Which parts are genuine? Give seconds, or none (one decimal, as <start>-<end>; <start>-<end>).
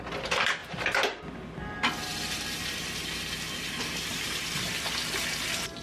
0.0-0.6; 1.2-4.1; 4.7-5.8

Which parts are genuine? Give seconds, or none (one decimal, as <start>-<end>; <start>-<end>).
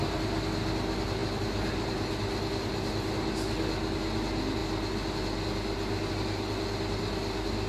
0.0-7.7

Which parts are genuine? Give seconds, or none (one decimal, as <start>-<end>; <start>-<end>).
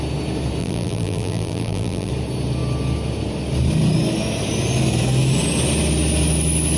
0.0-0.6; 2.1-6.8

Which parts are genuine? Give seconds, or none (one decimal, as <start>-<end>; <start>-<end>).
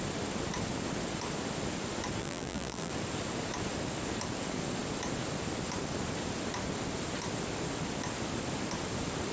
0.0-2.2; 2.9-9.3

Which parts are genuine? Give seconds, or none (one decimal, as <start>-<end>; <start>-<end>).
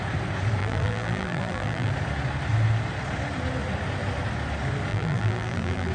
0.0-0.6; 1.9-4.9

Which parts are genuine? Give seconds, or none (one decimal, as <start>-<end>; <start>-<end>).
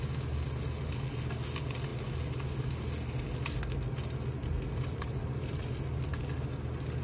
0.0-4.4; 5.6-7.0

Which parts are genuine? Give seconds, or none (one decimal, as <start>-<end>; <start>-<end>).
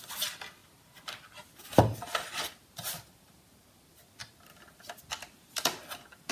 0.0-6.3